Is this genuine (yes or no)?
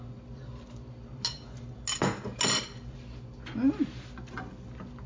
yes